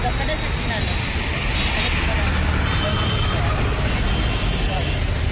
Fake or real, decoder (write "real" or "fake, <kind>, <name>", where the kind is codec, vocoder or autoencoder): real